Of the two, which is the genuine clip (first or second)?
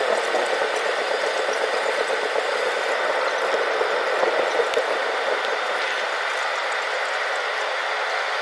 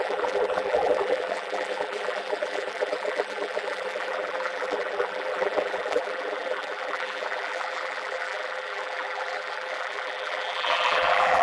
first